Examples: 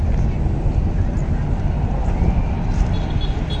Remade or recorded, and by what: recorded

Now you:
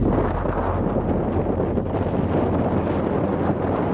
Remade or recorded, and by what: recorded